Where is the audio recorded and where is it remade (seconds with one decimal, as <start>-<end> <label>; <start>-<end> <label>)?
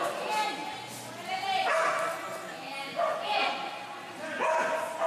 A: 0.0-5.1 recorded